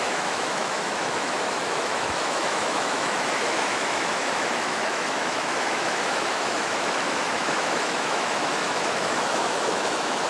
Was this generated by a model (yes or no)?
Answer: yes